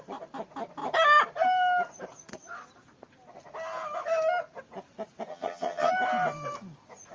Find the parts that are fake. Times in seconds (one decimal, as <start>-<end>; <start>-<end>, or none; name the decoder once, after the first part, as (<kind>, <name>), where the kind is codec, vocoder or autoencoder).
5.3-5.9 (vocoder, HiFi-GAN)